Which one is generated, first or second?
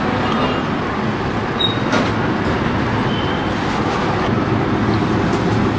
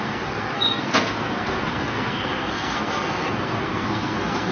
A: second